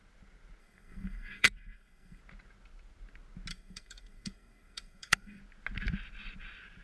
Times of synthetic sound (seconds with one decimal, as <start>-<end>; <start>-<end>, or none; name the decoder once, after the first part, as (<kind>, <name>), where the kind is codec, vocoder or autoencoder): 0.6-2.2 (codec, SNAC); 3.5-5.4

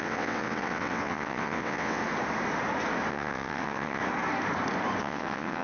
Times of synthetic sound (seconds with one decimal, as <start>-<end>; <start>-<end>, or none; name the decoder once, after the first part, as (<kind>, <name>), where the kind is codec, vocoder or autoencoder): 0.0-2.0 (vocoder, WaveNeXt); 3.1-4.0; 5.0-5.6

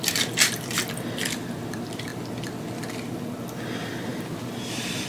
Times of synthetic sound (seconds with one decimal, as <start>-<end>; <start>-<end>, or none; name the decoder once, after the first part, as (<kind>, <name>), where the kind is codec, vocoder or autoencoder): 0.0-2.1 (vocoder, BigVGAN v2); 3.5-5.1

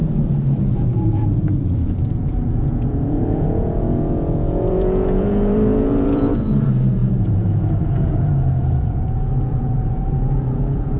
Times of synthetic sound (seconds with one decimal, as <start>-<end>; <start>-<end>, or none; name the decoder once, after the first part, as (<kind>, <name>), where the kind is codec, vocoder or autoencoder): 0.0-11.0 (vocoder, Vocos)

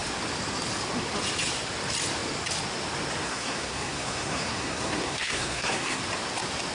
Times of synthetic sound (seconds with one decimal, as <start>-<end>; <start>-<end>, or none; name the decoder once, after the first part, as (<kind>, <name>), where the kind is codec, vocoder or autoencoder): 3.2-6.0 (codec, SNAC)

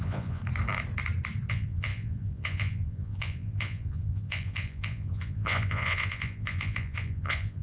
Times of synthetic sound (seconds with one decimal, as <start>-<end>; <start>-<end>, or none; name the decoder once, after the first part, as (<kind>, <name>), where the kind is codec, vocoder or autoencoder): 0.0-0.4 (vocoder, Vocos); 1.5-7.6

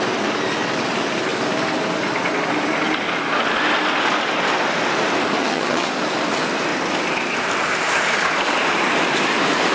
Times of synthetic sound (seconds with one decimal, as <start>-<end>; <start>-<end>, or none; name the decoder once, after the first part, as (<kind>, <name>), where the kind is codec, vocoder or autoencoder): 5.4-5.9 (vocoder, HiFi-GAN)

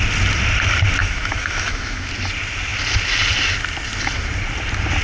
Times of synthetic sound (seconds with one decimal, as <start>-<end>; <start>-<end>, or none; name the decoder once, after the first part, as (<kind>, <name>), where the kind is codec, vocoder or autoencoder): 1.0-2.1 (autoencoder, DAC-VAE)